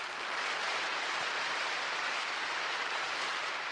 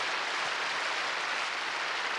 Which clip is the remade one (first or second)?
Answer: first